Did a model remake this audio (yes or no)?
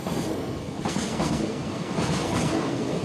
yes